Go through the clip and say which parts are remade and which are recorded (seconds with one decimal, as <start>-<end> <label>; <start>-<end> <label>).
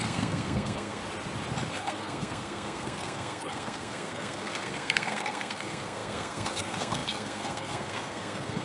0.0-1.0 remade; 1.0-1.7 recorded; 1.7-8.6 remade